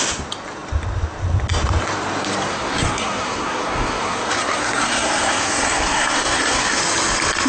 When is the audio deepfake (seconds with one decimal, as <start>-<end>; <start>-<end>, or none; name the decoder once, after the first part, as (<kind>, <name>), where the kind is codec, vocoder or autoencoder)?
2.5-6.8 (codec, SNAC)